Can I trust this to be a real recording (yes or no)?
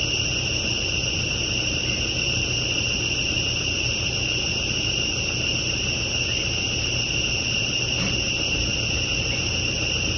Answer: yes